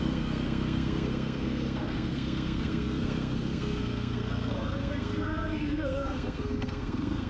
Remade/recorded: remade